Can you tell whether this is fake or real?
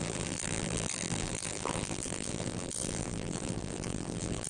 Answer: fake